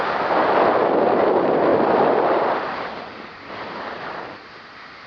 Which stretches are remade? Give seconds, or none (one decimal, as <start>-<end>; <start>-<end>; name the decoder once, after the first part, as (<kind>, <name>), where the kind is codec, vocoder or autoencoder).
1.7-4.5 (vocoder, BigVGAN v2)